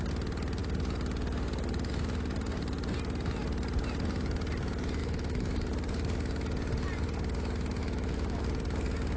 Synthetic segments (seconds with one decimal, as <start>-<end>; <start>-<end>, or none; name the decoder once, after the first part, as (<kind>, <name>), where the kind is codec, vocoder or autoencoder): 5.0-5.7 (autoencoder, DAC-VAE); 7.8-8.4